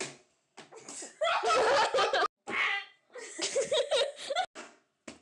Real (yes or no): yes